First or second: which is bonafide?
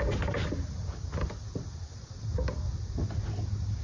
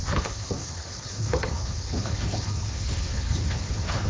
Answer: first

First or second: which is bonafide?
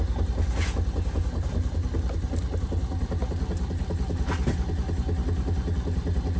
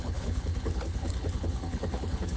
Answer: first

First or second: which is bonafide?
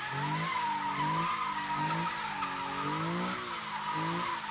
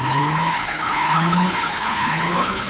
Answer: first